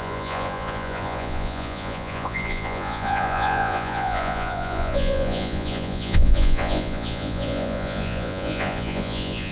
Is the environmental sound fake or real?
fake